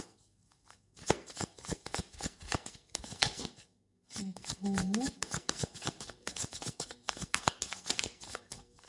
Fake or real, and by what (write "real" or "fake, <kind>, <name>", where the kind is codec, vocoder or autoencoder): fake, codec, SNAC